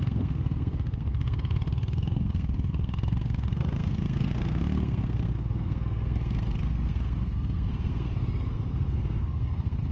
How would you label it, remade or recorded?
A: remade